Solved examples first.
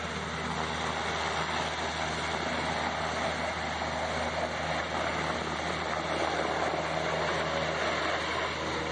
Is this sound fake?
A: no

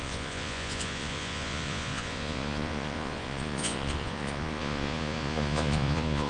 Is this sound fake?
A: yes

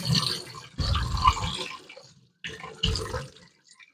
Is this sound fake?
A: no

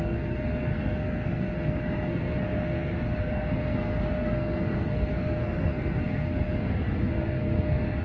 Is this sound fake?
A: yes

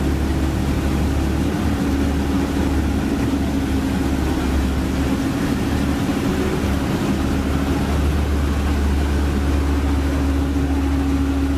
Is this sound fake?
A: no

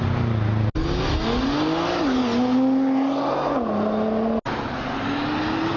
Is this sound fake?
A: no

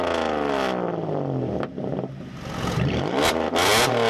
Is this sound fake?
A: no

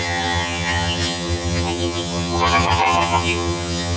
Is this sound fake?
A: yes